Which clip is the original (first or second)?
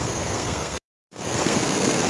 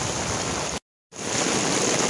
second